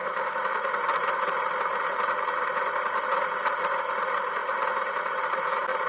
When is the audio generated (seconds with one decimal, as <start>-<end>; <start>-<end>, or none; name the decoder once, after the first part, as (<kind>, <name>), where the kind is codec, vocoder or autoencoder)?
none

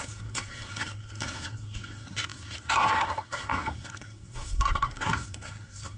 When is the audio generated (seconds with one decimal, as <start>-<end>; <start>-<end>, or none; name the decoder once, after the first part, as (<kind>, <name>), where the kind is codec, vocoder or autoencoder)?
0.0-6.0 (codec, SNAC)

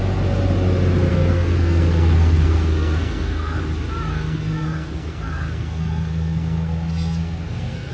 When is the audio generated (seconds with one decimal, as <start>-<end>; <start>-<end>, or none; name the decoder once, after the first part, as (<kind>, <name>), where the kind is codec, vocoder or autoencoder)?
1.1-3.6 (codec, SNAC); 4.1-7.9

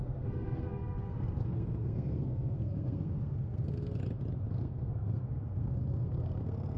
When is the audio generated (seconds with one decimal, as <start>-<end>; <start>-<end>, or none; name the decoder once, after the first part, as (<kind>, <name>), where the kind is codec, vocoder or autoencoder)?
0.0-4.0 (codec, SNAC); 4.5-6.8

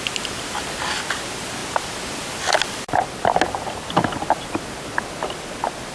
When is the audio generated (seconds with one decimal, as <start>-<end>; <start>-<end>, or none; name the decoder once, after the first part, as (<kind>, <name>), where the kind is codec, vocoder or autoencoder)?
none

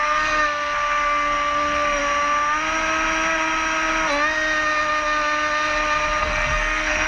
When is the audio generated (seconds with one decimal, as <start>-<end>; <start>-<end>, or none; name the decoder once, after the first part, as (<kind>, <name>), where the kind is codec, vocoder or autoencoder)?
0.0-2.0 (codec, SNAC); 6.2-7.1

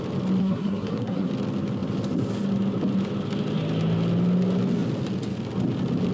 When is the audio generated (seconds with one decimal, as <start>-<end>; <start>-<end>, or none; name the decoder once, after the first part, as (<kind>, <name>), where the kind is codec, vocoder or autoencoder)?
0.4-1.3 (codec, SNAC)

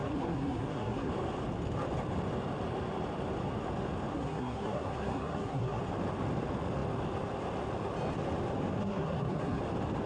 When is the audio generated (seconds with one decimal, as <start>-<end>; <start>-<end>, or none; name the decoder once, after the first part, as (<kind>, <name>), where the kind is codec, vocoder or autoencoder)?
0.0-1.1 (codec, SNAC); 4.1-5.8; 8.8-9.6